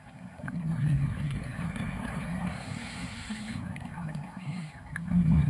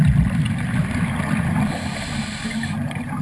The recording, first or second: second